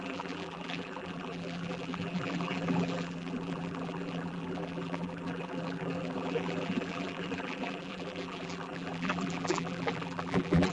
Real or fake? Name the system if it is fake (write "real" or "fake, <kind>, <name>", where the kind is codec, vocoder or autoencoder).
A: fake, vocoder, BigVGAN v2